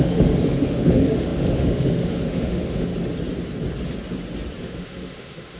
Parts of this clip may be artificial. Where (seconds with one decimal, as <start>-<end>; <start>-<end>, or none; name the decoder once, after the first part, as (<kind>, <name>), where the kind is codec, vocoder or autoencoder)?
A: 0.0-2.9 (autoencoder, DAC-VAE); 4.6-5.6